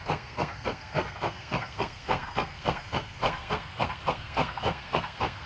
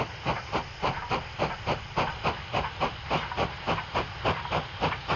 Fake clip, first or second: first